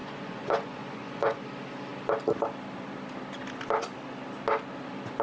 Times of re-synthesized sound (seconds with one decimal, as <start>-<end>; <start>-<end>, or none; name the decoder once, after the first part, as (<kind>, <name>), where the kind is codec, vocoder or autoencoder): 0.0-1.4 (vocoder, Vocos)